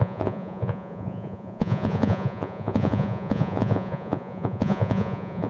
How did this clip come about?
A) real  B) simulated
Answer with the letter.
B